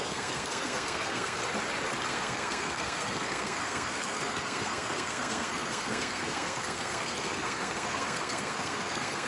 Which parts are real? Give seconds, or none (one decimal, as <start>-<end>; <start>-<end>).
1.4-2.1